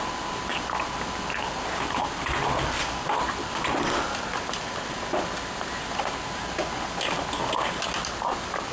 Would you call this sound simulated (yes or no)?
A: no